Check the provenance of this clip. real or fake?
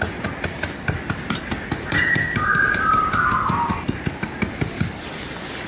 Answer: fake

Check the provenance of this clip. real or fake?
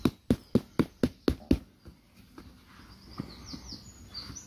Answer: real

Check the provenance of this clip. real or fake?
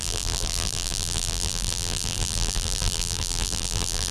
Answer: fake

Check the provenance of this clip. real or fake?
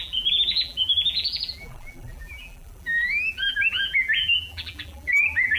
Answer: fake